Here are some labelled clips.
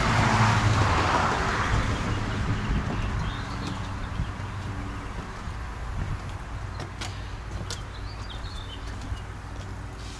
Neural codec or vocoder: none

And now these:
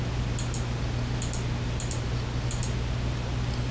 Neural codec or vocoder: none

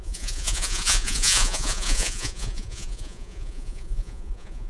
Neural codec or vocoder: vocoder, Vocos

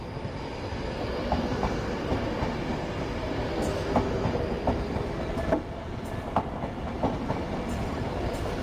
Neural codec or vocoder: none